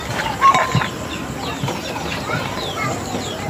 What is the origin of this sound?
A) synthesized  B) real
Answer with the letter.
B